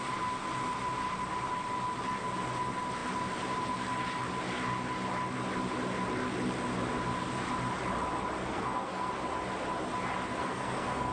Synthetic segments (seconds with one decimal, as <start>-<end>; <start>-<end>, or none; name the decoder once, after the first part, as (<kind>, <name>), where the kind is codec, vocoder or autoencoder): 8.4-9.1 (codec, SNAC); 10.4-11.1